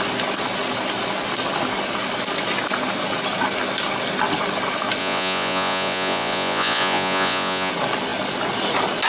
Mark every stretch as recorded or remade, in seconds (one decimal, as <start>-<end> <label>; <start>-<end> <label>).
0.0-5.0 recorded; 5.0-7.7 remade; 7.7-9.1 recorded